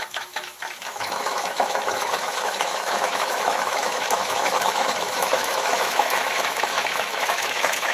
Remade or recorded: remade